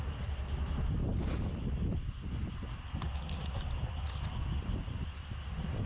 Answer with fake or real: real